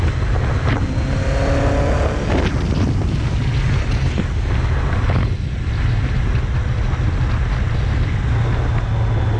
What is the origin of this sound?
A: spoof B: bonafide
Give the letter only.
B